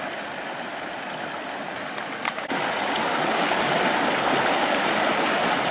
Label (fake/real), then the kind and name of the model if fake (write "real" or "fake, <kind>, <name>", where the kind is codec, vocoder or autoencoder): real